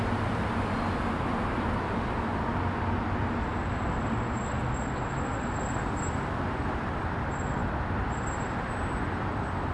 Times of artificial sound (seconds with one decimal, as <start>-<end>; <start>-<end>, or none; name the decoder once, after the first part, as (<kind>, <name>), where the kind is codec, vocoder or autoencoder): none